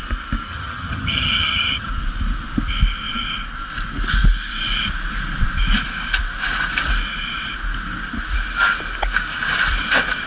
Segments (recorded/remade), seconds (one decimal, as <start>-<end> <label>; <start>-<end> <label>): 0.0-0.5 recorded; 0.5-1.9 remade; 1.9-10.3 recorded